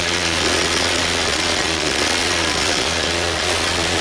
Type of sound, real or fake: fake